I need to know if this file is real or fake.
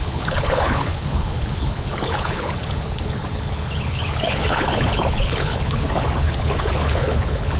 fake